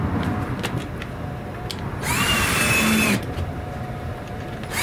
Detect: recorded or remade recorded